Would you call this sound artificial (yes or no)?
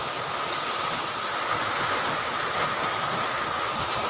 no